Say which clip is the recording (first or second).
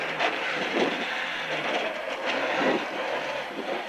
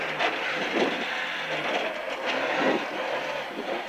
second